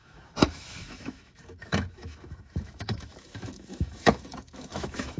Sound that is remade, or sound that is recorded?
remade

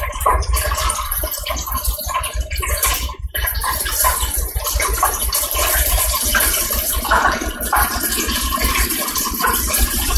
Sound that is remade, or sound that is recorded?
remade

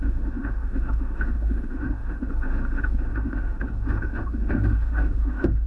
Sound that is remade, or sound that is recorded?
remade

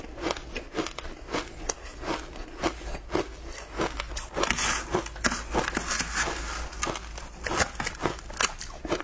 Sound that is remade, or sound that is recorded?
recorded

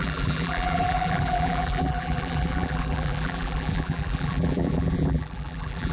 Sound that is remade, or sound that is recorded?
remade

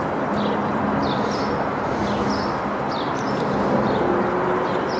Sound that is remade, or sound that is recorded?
recorded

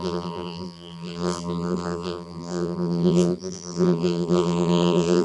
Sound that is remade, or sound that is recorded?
remade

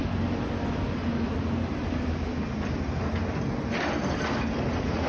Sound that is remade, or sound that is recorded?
recorded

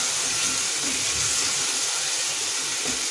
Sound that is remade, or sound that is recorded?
recorded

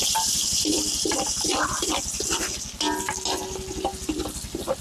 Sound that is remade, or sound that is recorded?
recorded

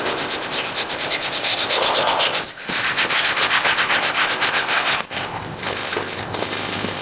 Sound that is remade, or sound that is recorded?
remade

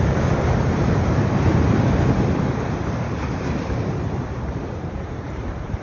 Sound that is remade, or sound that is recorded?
remade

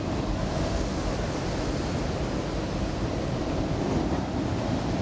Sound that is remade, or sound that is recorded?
recorded